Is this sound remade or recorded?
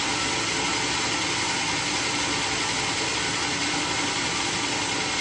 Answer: recorded